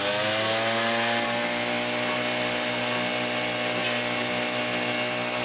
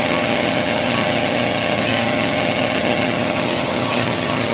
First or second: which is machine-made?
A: second